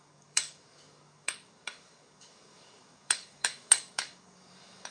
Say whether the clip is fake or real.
fake